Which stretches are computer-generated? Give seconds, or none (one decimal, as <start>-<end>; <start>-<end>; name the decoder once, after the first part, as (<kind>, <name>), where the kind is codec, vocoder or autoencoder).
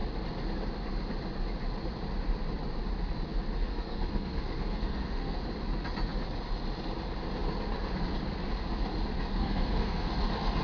3.7-5.4 (codec, SNAC); 9.3-10.1